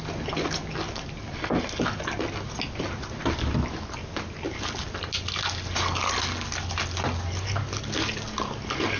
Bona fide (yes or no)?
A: yes